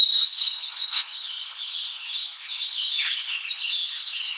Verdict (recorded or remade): remade